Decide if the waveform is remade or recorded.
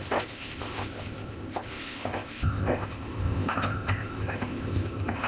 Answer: remade